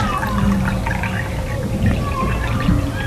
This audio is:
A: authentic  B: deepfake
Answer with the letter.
A